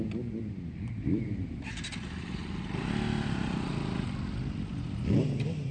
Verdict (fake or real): real